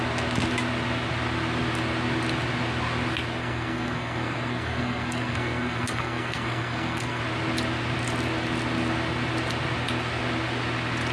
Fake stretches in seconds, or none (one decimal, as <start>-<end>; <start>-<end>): 3.4-7.2